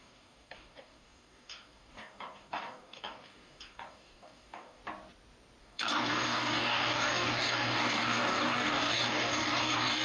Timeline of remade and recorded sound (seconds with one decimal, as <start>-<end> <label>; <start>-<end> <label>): 0.0-4.8 remade; 4.8-5.6 recorded; 5.6-10.0 remade